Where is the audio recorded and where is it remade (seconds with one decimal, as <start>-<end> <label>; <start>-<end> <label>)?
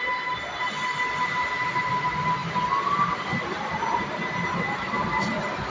0.0-5.7 recorded